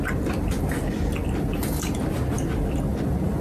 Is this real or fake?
real